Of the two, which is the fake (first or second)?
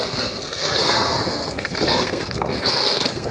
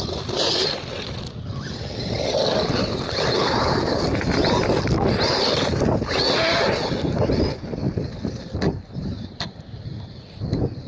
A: first